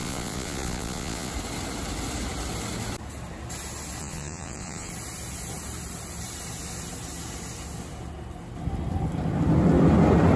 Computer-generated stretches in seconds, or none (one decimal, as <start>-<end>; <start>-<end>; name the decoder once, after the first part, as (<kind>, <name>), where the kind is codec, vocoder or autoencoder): 0.0-1.3 (vocoder, Vocos); 4.0-4.9